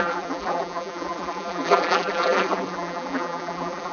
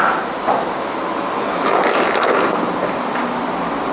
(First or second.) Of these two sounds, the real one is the second